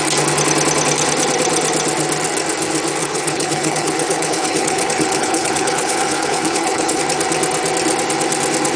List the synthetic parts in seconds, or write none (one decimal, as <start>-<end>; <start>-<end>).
3.0-7.0